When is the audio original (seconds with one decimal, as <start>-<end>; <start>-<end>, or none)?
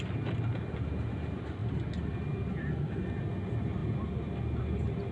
0.0-5.1